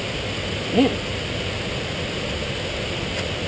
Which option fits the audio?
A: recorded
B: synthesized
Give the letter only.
A